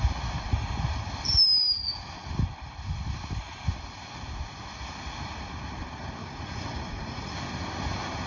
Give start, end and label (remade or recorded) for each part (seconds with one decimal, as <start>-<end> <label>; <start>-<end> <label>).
0.0-6.2 recorded; 6.2-7.3 remade; 7.3-8.3 recorded

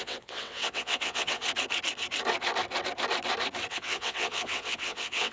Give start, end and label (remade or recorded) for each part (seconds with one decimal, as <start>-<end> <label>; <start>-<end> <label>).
0.0-1.4 remade; 1.4-3.7 recorded; 3.7-5.3 remade